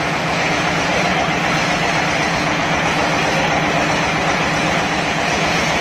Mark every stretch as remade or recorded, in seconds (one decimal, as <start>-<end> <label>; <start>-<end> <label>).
0.0-0.9 remade; 0.9-2.2 recorded; 2.2-3.0 remade; 3.0-4.6 recorded; 4.6-5.8 remade